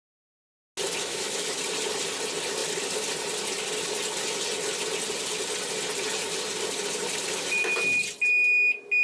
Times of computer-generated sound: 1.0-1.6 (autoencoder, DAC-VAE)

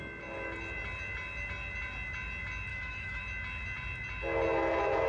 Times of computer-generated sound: 2.7-3.2 (autoencoder, DAC-VAE)

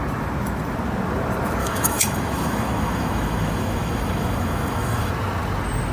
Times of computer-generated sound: 1.6-5.1 (autoencoder, DAC-VAE)